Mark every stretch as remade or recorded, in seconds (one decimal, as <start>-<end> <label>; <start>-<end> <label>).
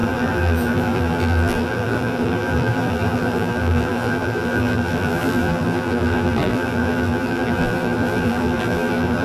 0.0-9.2 remade